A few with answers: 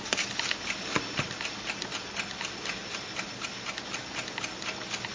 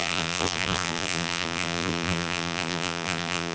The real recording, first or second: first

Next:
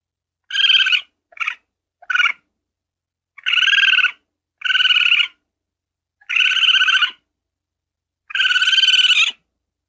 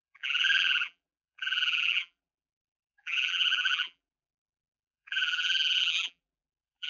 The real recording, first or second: first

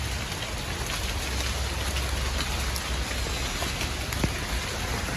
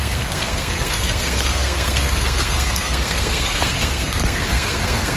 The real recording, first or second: first